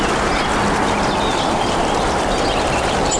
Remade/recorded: recorded